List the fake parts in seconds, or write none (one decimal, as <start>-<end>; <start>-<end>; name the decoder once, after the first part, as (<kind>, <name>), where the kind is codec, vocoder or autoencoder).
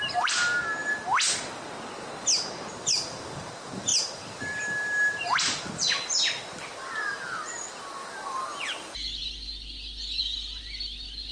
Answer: none